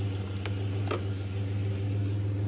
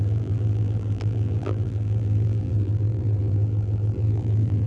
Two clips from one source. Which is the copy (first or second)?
second